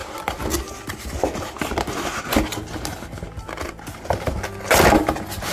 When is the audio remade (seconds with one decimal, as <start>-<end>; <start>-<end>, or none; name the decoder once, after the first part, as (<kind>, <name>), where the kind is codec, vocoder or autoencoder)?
none